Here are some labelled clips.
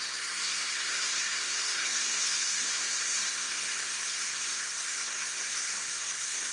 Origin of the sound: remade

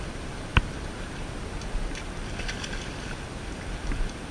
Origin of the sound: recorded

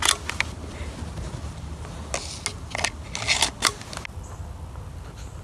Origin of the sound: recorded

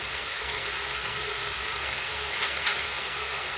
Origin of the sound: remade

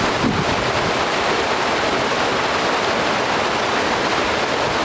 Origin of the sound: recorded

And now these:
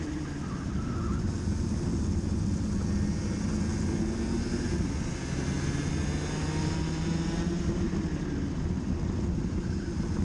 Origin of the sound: recorded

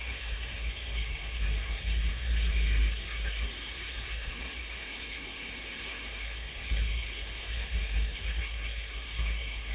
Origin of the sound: remade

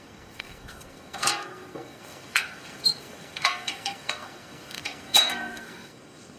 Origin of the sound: remade